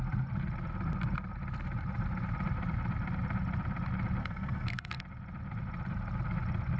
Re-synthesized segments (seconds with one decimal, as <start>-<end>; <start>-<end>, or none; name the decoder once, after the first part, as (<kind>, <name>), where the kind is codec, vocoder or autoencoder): 4.2-5.0 (codec, SNAC)